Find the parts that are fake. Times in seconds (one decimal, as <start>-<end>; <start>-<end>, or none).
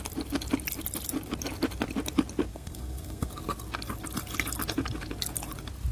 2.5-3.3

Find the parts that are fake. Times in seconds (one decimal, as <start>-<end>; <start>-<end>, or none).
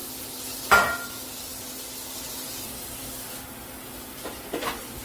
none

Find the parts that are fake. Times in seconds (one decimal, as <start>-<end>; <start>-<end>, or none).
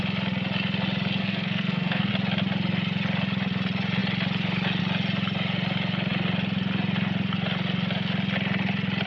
1.2-2.1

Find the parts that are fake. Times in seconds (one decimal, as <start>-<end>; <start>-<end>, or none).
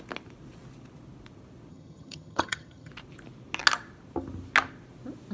1.7-2.9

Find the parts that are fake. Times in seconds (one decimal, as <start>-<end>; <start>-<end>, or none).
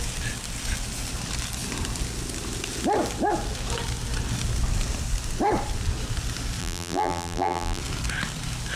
6.6-7.8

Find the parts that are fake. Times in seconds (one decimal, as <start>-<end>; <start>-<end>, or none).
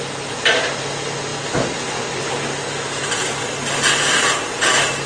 none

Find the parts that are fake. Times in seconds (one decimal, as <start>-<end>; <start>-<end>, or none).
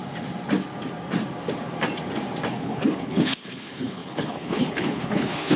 2.5-5.6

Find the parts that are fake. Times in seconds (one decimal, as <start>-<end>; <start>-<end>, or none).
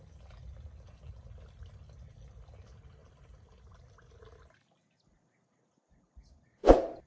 none